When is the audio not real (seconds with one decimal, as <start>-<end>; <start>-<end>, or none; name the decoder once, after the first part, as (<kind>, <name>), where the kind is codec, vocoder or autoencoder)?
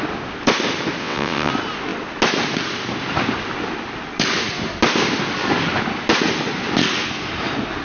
1.0-1.5 (vocoder, WaveNeXt)